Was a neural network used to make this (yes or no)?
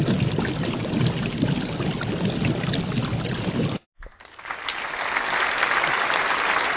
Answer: no